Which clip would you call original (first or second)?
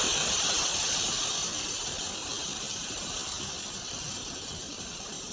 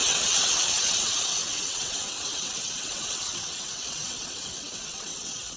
first